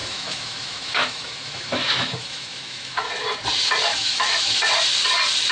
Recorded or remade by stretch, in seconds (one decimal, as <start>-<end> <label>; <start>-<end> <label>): 0.0-3.1 remade; 3.1-3.9 recorded; 3.9-4.6 remade; 4.6-5.5 recorded